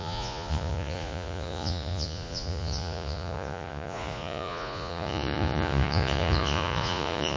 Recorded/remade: remade